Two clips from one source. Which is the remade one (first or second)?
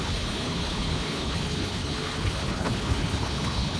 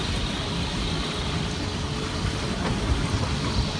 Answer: first